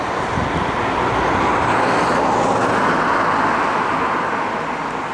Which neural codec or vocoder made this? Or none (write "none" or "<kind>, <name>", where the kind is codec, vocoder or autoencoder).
none